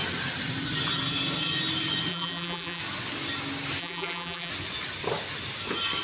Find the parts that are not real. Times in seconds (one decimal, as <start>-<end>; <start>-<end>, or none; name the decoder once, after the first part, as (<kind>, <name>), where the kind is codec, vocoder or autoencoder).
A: 2.1-2.8 (vocoder, BigVGAN v2); 3.8-4.5